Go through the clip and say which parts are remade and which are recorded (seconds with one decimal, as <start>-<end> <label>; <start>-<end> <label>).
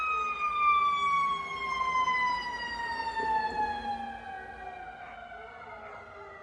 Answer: 0.0-6.4 recorded